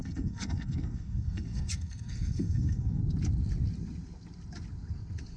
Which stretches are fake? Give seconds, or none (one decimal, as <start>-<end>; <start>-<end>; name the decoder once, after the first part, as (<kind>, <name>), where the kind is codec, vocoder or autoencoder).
0.0-3.0 (codec, SNAC)